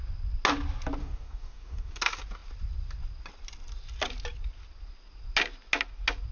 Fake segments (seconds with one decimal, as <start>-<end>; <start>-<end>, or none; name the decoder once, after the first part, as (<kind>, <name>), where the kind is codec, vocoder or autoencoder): 1.0-2.0 (codec, DAC)